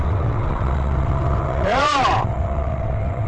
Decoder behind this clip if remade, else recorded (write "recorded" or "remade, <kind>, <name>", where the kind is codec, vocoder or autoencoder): remade, vocoder, WaveNeXt